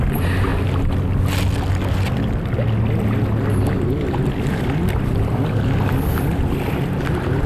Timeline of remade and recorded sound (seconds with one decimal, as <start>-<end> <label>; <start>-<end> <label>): 0.0-7.5 recorded